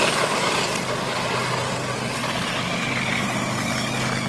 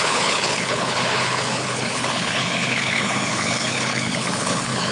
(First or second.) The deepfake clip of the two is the second